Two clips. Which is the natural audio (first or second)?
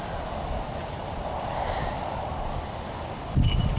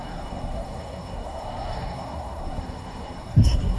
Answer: first